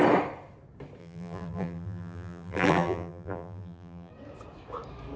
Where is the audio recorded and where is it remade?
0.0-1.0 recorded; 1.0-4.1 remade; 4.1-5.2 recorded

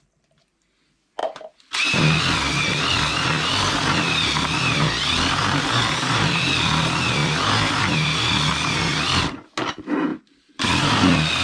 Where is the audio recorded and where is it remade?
0.0-1.2 recorded; 1.2-2.2 remade; 2.2-10.1 recorded; 10.1-10.8 remade; 10.8-11.4 recorded